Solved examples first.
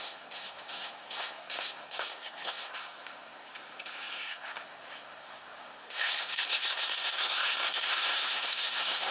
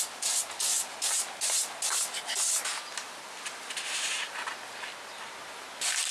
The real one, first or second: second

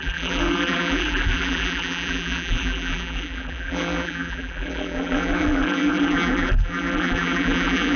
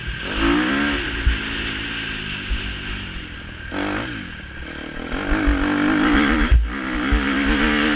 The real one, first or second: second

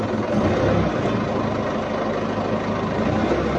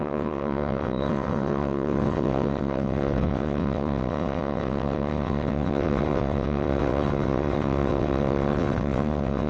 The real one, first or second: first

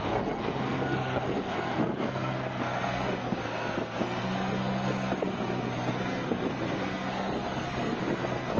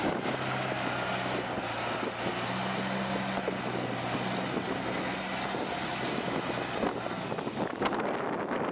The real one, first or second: second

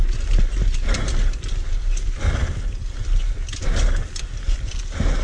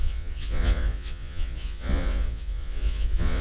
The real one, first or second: first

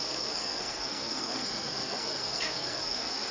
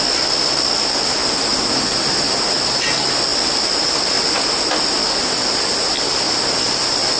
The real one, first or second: second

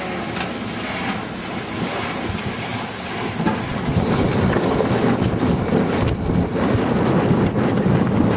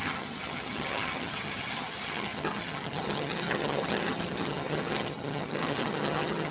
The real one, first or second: first